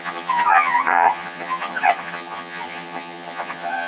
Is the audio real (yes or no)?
no